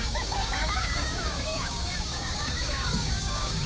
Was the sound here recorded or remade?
remade